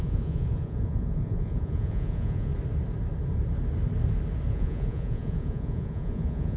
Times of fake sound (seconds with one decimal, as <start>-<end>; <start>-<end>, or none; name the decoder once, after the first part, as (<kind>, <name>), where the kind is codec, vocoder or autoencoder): 0.0-2.5 (vocoder, Vocos); 4.5-6.6